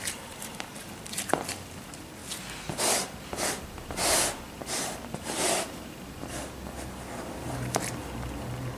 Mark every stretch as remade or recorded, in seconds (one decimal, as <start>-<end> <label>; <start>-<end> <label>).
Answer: 0.0-8.8 recorded